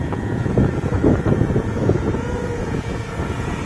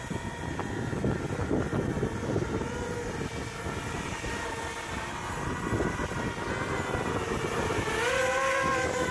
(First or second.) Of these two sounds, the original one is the second